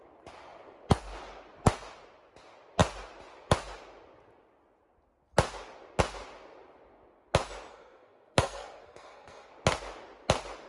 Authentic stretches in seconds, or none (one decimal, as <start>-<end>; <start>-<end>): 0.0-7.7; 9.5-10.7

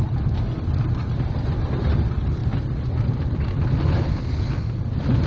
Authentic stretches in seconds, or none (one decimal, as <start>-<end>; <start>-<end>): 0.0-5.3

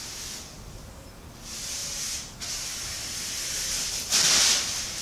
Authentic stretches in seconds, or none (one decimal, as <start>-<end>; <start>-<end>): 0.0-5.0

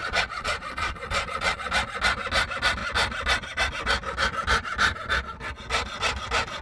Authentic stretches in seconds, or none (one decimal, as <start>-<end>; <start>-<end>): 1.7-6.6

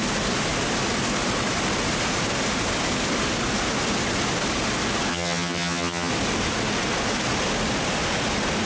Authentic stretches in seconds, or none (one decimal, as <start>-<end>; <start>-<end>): 0.0-5.1; 6.1-8.7